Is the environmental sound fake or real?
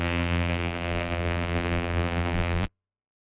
fake